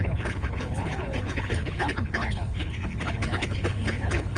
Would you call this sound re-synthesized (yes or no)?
yes